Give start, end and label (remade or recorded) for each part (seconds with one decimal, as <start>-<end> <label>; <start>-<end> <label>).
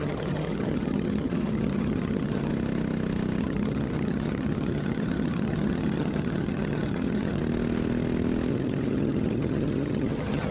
0.0-2.5 remade; 2.5-3.4 recorded; 3.4-7.4 remade; 7.4-8.5 recorded; 8.5-10.5 remade